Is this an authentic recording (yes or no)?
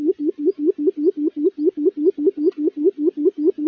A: yes